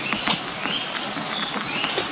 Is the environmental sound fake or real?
real